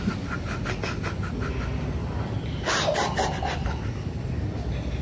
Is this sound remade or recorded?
recorded